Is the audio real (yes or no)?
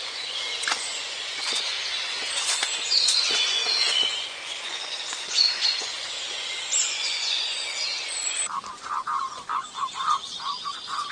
no